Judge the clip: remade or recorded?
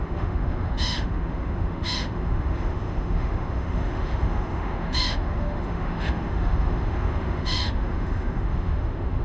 remade